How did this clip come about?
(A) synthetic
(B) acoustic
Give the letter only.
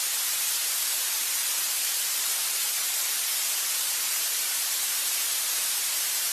A